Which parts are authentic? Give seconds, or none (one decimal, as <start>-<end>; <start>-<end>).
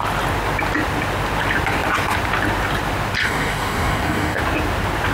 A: 0.0-3.2; 4.4-5.1